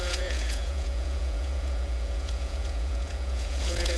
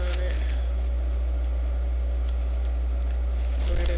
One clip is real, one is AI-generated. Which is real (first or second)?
second